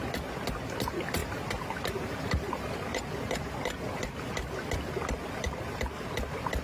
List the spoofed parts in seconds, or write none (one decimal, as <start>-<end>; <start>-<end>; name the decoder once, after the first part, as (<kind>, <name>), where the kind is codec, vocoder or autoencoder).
none